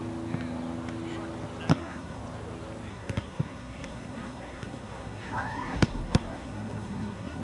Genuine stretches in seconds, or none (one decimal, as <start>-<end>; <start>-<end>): 0.0-1.7; 2.2-2.9